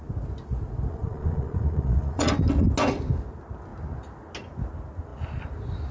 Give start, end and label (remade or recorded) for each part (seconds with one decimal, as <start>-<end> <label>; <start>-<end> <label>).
0.0-0.9 recorded; 0.9-2.3 remade; 2.3-5.9 recorded